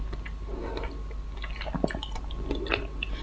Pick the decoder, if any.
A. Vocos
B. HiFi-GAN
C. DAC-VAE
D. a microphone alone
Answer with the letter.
D